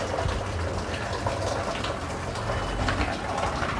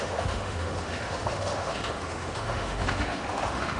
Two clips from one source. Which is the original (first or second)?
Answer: first